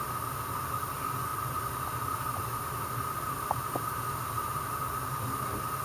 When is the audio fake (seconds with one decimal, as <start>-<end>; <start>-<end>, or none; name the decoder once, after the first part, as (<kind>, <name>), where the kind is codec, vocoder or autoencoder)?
1.3-4.8 (vocoder, BigVGAN v2)